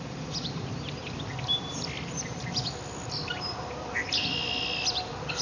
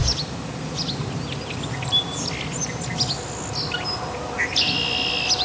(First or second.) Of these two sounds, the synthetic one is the first